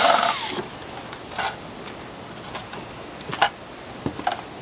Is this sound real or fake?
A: real